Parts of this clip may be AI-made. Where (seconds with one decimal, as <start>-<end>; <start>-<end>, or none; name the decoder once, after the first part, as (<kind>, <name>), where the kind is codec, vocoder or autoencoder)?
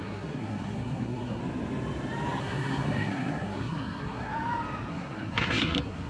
0.0-1.4 (codec, SNAC); 2.4-4.3; 4.9-6.1